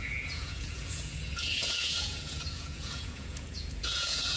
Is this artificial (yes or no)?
yes